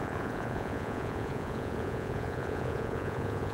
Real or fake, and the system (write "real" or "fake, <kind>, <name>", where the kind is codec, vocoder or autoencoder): fake, vocoder, Vocos